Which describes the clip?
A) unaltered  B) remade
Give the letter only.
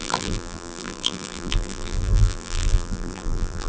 B